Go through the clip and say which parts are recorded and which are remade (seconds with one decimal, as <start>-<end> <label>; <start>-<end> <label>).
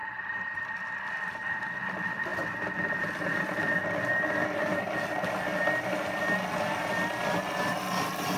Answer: 0.0-1.9 remade; 1.9-2.3 recorded; 2.3-3.6 remade; 3.6-8.4 recorded